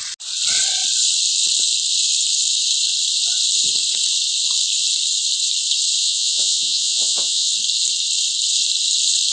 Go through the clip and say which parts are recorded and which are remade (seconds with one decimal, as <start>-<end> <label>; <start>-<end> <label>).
0.0-6.0 recorded; 6.0-7.5 remade; 7.5-9.3 recorded